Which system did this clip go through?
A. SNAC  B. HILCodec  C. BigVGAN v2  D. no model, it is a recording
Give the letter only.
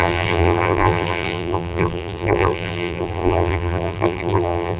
C